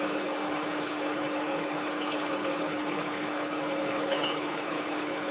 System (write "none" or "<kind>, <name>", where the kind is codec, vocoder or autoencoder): codec, HILCodec